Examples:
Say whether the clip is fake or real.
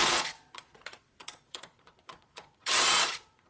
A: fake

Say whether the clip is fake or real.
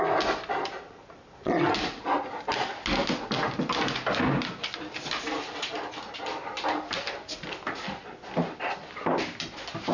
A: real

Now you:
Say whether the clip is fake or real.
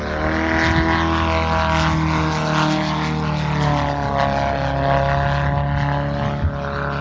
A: real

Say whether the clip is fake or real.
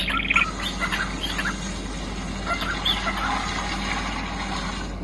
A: real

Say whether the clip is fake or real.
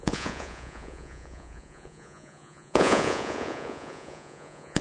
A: fake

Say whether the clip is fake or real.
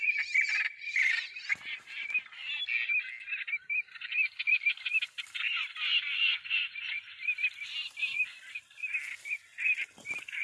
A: real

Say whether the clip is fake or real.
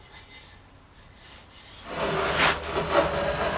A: real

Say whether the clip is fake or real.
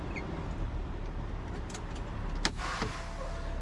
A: real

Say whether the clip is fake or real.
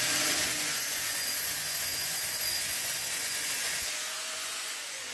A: fake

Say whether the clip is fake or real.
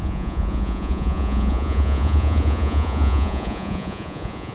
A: fake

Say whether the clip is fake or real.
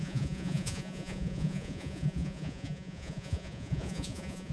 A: fake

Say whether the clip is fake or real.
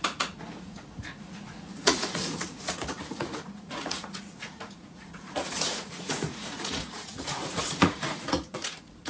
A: fake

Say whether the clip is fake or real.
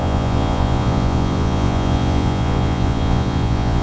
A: fake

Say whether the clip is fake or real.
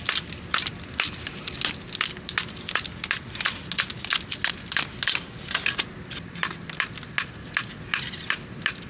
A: real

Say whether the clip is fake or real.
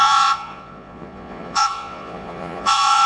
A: fake